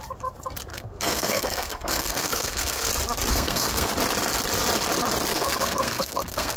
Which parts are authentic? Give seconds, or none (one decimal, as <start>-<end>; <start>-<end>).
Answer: 0.0-0.7; 2.9-3.3; 3.9-5.3